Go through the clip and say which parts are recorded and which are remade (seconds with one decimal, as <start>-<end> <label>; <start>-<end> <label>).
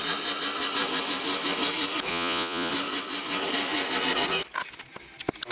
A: 0.0-2.1 recorded; 2.1-2.7 remade; 2.7-5.5 recorded